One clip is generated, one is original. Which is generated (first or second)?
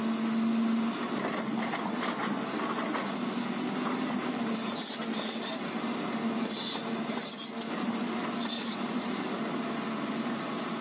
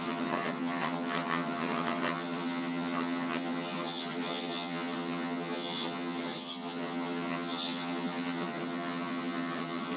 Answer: second